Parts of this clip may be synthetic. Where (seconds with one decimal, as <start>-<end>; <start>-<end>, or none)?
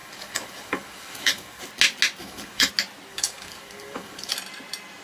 0.0-1.7; 2.2-2.7; 3.1-4.3